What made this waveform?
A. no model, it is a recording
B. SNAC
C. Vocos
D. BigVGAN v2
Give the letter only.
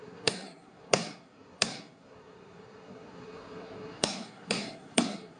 B